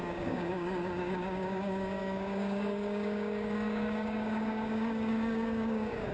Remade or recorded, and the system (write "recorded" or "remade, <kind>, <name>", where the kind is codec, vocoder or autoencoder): remade, codec, DAC